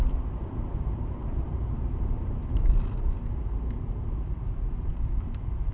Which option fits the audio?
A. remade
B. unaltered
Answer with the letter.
A